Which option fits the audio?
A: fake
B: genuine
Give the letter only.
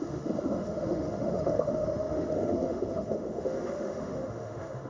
A